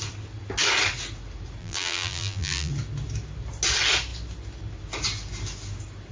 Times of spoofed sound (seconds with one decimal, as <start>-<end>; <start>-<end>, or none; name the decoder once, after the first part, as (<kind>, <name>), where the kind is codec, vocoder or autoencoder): 1.6-2.7 (vocoder, BigVGAN v2)